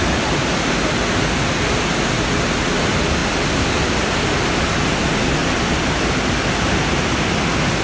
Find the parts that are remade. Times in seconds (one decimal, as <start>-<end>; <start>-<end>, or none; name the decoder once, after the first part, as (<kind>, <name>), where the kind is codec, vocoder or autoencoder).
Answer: 0.0-0.7 (vocoder, BigVGAN v2); 5.4-6.1